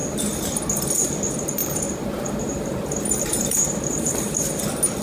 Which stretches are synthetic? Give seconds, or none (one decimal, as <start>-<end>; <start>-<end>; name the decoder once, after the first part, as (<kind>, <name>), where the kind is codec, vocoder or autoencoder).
1.6-4.6 (vocoder, BigVGAN v2)